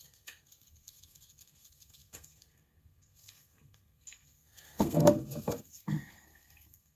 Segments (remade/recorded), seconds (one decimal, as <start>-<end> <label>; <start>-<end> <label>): 0.0-7.0 remade